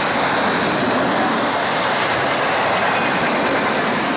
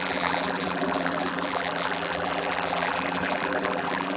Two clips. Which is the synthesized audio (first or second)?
second